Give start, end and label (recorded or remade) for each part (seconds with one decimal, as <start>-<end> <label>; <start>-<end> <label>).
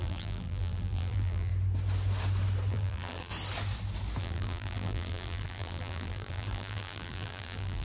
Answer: 0.0-1.5 remade; 1.5-2.7 recorded; 2.7-3.3 remade; 3.3-4.2 recorded; 4.2-7.8 remade